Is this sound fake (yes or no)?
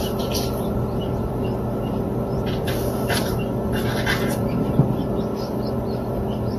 yes